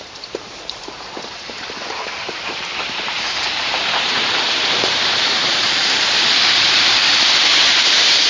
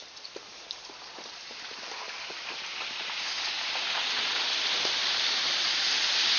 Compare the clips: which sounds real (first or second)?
second